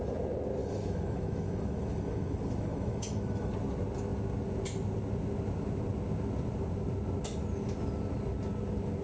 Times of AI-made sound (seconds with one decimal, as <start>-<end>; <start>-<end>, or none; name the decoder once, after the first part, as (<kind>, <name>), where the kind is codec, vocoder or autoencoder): 0.6-3.5 (autoencoder, DAC-VAE)